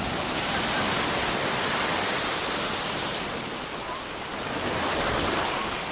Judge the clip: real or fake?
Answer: real